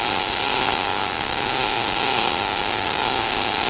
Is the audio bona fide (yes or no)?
no